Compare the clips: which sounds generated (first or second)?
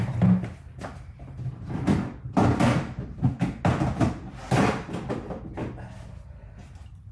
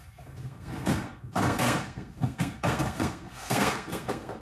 second